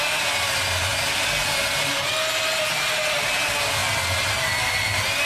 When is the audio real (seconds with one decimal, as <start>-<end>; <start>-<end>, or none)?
0.0-5.2